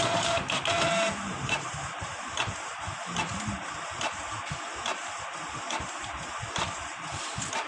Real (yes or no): no